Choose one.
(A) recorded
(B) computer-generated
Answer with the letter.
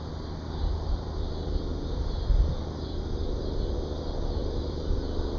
A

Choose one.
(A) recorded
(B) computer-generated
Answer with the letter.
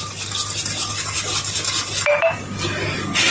A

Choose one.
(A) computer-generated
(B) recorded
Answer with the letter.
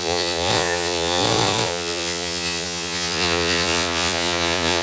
A